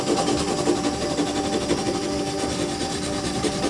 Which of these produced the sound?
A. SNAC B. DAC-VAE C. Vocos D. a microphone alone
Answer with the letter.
D